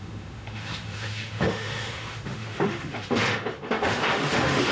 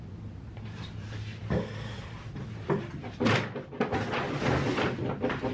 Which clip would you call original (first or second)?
second